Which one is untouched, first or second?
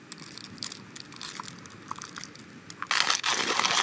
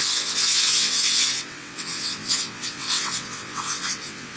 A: first